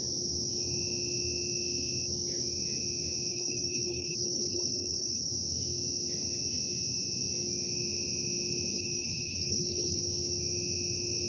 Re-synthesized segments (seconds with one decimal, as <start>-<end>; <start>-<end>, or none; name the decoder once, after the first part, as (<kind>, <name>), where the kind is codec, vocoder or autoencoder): 3.3-5.3 (codec, HILCodec); 8.7-10.0